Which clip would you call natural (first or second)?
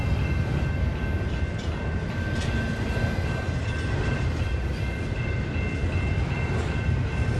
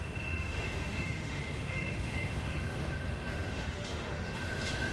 first